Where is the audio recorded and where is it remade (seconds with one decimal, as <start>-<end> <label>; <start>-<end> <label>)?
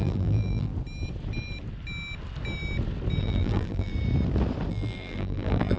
0.0-0.7 remade; 0.7-3.2 recorded; 3.2-3.9 remade; 3.9-4.7 recorded; 4.7-5.8 remade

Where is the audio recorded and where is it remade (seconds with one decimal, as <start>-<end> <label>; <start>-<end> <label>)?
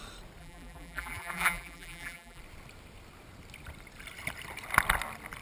0.0-0.4 recorded; 0.4-2.4 remade; 2.4-5.4 recorded